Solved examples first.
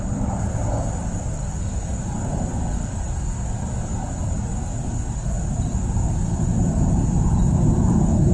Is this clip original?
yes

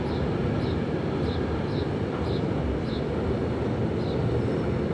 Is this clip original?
yes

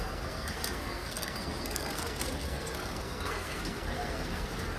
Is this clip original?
no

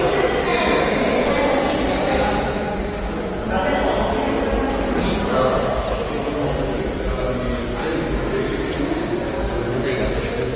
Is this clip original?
yes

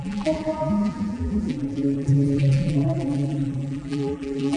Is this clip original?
no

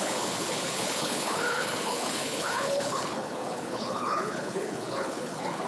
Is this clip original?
no